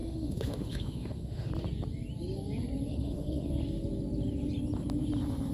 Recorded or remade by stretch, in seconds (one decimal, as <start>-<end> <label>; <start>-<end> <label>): 0.0-1.5 remade; 1.5-2.9 recorded; 2.9-3.5 remade; 3.5-5.5 recorded